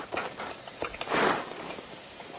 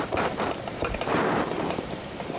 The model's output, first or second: first